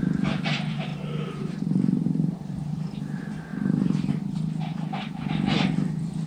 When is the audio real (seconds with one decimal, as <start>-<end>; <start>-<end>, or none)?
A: 0.0-0.9; 3.0-3.5; 4.1-4.7; 5.2-6.3